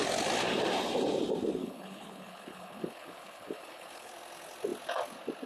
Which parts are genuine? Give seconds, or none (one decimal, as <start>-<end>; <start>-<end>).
0.0-1.6; 4.1-5.5